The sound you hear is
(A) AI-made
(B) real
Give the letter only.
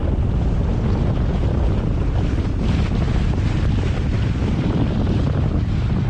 B